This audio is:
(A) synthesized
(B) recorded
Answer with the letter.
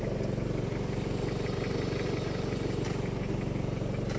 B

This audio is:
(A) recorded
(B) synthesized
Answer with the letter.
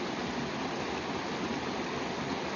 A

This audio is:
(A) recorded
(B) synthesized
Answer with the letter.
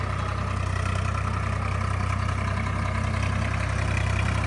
A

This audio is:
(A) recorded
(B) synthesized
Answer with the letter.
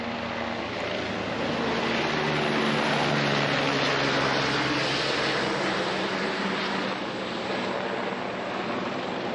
A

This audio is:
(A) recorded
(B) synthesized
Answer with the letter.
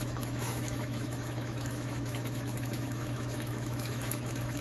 B